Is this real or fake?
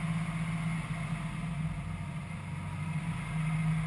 real